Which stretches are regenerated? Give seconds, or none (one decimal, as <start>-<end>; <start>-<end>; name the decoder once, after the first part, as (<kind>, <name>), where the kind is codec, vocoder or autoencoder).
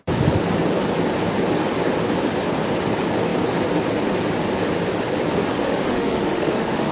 5.6-6.9 (autoencoder, DAC-VAE)